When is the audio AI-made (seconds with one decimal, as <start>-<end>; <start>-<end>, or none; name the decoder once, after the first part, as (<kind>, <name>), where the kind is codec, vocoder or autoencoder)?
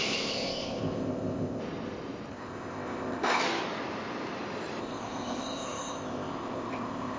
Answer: 0.0-1.6 (codec, ZipCodec); 2.3-3.4; 4.8-7.2